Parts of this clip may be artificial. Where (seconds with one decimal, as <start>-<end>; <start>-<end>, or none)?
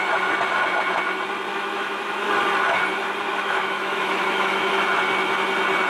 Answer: 1.5-2.3; 3.3-4.8